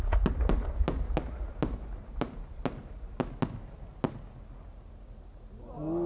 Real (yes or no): yes